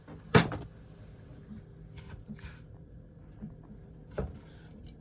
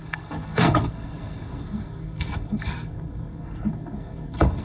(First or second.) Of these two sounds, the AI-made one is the second